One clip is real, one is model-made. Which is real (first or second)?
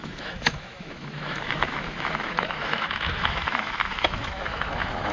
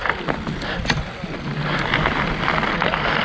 second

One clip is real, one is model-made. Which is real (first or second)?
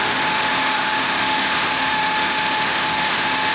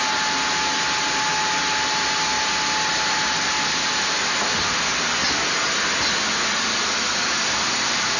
second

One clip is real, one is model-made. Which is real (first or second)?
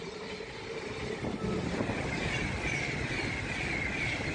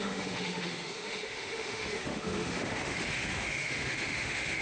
first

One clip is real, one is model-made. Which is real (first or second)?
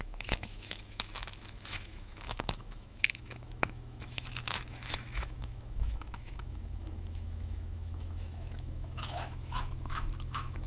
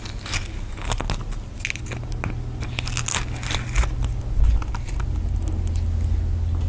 second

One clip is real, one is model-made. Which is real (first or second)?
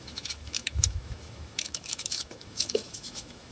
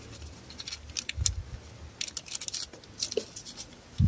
second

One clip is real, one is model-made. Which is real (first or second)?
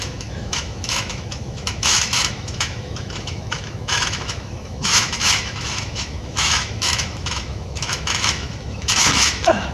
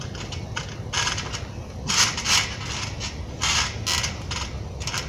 second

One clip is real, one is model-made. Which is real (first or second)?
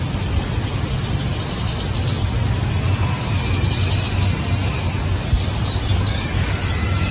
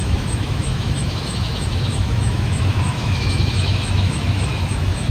first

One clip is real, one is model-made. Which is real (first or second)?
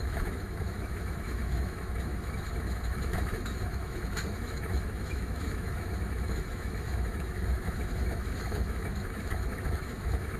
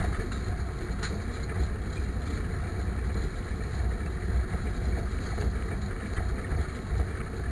second